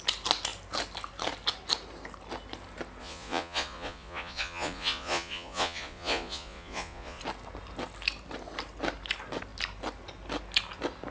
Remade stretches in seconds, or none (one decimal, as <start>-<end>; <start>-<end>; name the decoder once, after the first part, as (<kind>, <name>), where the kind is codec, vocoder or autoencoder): 3.0-7.2 (vocoder, Vocos)

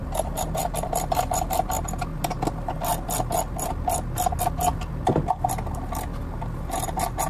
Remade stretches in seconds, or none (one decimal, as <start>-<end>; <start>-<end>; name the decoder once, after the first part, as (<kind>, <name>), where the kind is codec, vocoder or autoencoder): none

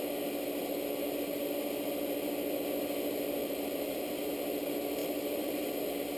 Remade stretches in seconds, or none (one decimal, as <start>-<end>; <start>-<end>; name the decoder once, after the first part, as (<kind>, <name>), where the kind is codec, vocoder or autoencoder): 3.4-4.3 (vocoder, BigVGAN v2); 5.0-5.8

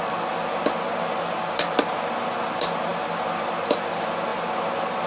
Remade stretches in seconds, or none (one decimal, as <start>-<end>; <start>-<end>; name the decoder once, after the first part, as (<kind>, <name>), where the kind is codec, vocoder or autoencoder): none

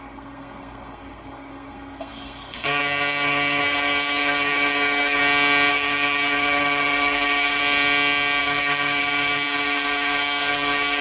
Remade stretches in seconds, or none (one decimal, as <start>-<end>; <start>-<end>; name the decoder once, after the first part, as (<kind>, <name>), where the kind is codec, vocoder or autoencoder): 0.0-5.2 (codec, SNAC); 5.7-7.6; 8.4-11.0

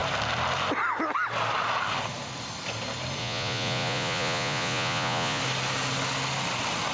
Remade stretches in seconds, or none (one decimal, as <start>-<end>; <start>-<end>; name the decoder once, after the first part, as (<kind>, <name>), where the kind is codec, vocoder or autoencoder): 3.2-5.4 (vocoder, Vocos)

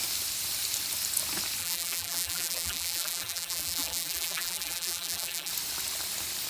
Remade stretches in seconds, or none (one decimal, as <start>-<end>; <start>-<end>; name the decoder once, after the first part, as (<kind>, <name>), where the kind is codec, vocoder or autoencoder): 1.6-5.5 (vocoder, BigVGAN v2)